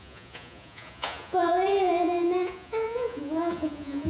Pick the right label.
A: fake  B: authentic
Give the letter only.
A